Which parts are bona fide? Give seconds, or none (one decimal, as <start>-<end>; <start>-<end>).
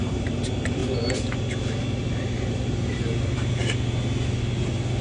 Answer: 0.8-2.5; 3.6-5.0